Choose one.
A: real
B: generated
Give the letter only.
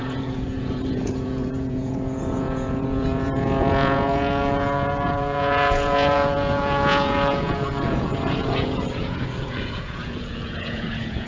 B